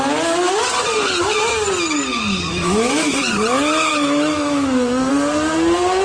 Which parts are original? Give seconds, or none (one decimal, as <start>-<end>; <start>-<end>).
0.0-2.5; 3.1-3.9; 5.1-6.0